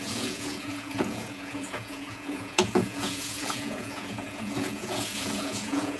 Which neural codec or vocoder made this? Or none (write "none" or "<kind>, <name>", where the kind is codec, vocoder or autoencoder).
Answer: vocoder, Vocos